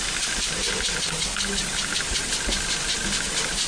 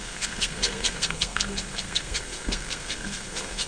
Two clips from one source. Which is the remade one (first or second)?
second